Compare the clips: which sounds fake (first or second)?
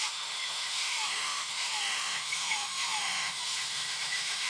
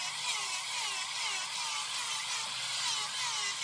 first